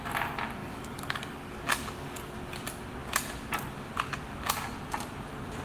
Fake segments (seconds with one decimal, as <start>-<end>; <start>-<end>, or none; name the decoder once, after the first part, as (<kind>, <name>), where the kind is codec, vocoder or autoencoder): 0.6-2.3 (codec, DAC)